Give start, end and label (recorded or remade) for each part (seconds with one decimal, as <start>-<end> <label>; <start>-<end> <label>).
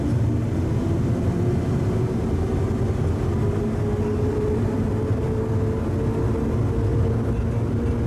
0.0-8.1 recorded